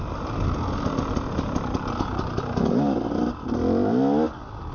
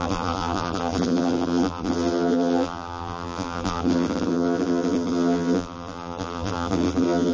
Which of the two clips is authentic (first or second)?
first